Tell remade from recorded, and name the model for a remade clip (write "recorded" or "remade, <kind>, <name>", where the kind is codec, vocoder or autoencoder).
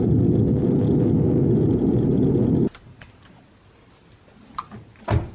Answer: recorded